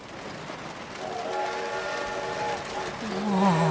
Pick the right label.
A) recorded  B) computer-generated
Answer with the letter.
A